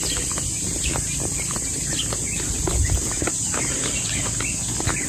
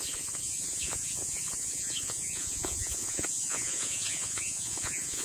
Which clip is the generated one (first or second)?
second